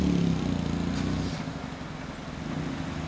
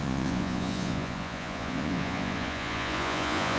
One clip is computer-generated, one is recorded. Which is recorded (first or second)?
first